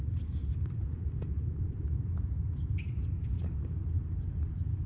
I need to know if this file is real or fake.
fake